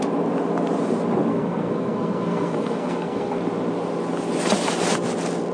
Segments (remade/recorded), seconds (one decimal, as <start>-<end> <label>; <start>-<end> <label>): 0.0-1.3 recorded; 1.3-3.4 remade; 3.4-5.5 recorded